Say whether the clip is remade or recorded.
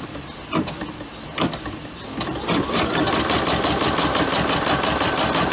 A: recorded